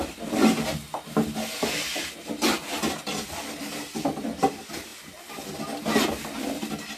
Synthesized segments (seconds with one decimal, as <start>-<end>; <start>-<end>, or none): none